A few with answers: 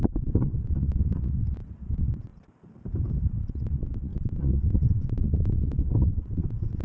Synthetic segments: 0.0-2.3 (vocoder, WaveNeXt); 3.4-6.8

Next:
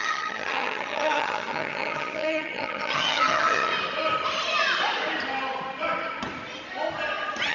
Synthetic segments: 0.0-3.7 (vocoder, HiFi-GAN)